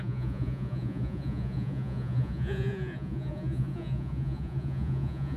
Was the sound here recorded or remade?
remade